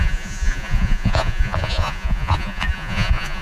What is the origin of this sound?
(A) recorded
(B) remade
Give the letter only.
B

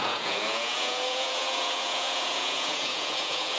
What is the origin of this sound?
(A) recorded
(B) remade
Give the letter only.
B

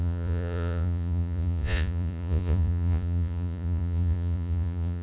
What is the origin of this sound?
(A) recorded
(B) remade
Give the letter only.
B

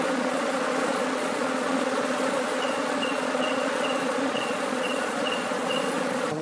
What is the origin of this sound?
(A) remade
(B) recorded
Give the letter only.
A